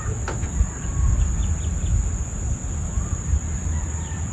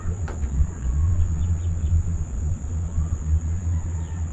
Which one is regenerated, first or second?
second